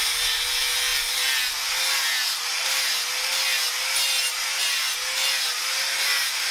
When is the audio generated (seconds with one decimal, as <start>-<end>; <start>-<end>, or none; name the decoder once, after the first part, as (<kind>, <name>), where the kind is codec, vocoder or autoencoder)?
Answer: none